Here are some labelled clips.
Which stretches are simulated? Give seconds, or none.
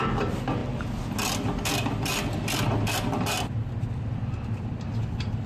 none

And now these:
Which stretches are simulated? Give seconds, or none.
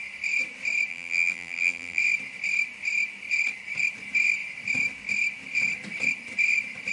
0.9-2.0 (vocoder, BigVGAN v2)